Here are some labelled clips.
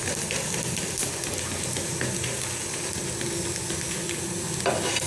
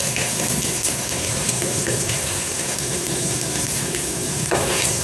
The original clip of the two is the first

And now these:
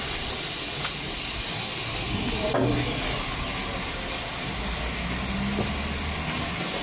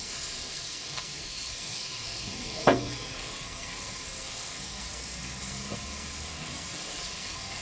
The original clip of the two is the first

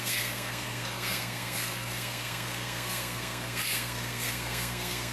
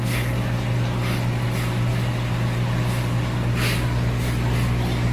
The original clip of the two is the second